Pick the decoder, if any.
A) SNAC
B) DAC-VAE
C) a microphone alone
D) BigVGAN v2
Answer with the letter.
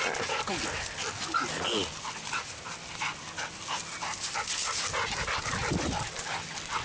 C